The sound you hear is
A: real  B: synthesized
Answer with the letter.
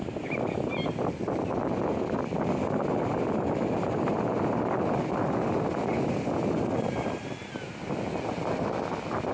A